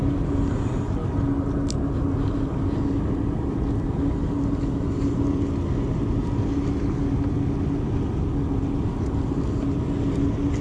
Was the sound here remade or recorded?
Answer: recorded